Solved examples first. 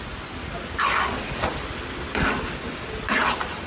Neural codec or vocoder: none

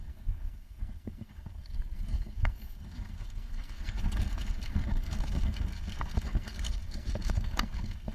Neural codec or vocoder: codec, SNAC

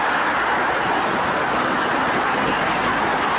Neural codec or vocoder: none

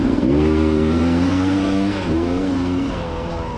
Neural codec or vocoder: codec, SNAC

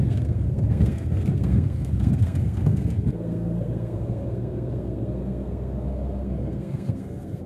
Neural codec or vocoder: codec, SNAC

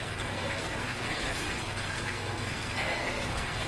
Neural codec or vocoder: codec, SNAC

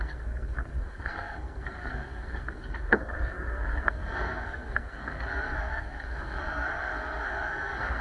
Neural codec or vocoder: codec, SNAC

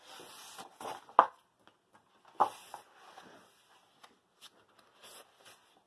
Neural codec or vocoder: none